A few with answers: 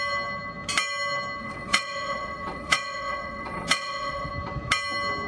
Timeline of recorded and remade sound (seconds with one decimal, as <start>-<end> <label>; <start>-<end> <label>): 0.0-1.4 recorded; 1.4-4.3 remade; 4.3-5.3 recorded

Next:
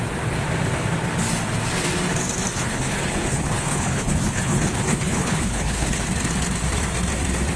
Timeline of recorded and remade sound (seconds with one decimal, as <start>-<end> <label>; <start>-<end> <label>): 0.0-2.5 recorded; 2.5-6.0 remade; 6.0-7.6 recorded

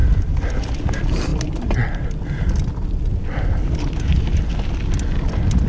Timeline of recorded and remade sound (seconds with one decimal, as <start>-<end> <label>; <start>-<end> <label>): 0.0-3.1 recorded; 3.1-4.6 remade; 4.6-5.7 recorded

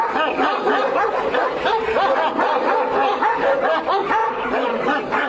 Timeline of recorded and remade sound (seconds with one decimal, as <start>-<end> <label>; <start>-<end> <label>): 0.0-4.2 recorded; 4.2-5.3 remade

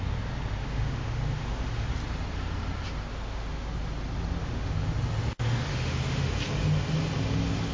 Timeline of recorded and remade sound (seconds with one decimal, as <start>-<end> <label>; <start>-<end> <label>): 0.0-0.6 recorded; 0.6-1.9 remade; 1.9-3.1 recorded; 3.1-3.7 remade; 3.7-4.4 recorded; 4.4-4.9 remade; 4.9-5.7 recorded; 5.7-6.3 remade; 6.3-7.7 recorded

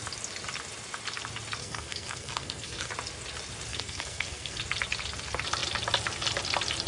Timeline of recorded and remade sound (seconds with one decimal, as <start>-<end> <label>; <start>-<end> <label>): 0.0-1.6 recorded; 1.6-2.9 remade; 2.9-3.7 recorded; 3.7-4.6 remade; 4.6-6.9 recorded

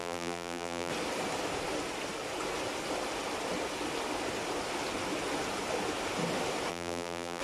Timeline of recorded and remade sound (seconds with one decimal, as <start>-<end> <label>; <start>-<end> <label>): 0.0-0.9 remade; 0.9-6.7 recorded; 6.7-7.4 remade